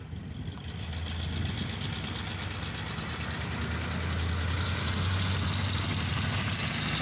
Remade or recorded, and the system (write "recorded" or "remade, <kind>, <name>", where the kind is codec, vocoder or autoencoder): recorded